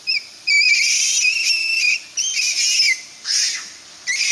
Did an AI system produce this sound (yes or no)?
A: no